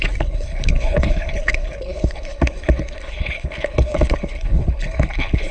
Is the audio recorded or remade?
remade